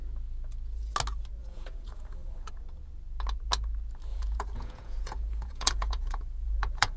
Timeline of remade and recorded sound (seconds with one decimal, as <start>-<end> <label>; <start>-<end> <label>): 0.0-1.4 recorded; 1.4-2.5 remade; 2.5-4.1 recorded; 4.1-7.0 remade